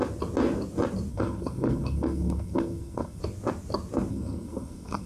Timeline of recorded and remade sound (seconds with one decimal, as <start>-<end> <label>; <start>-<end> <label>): 0.0-1.1 recorded; 1.1-3.2 remade; 3.2-4.1 recorded; 4.1-5.1 remade